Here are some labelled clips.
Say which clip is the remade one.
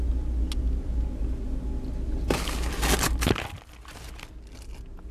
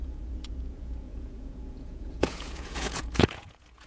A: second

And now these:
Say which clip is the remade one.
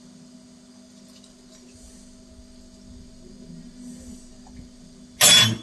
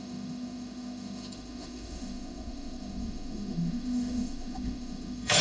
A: second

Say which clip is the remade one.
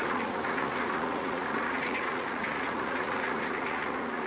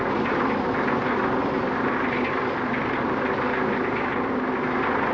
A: first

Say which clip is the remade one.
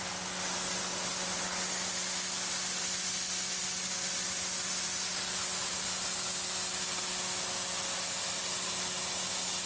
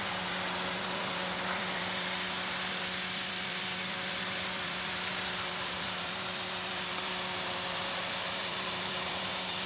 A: second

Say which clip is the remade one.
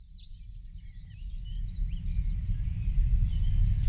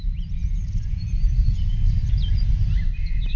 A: second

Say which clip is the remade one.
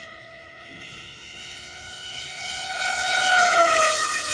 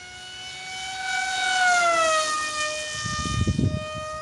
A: first